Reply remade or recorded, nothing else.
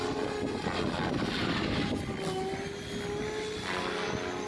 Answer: recorded